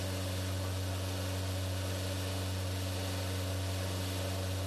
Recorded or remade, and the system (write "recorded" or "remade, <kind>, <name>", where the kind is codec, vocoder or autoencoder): recorded